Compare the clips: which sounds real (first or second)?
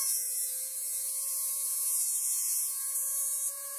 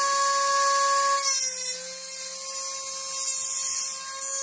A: second